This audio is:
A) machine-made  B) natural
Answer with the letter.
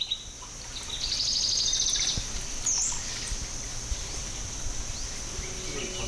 B